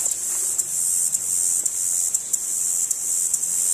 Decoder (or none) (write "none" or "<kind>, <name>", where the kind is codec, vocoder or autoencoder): none